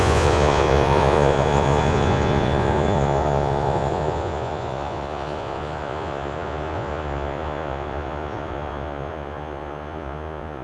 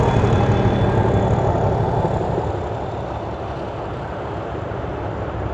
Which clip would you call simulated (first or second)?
first